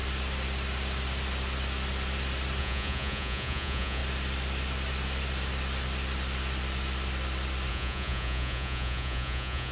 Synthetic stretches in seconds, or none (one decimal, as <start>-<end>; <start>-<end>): 2.6-4.0; 7.7-9.7